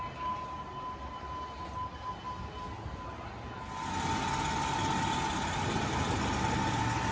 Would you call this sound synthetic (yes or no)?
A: no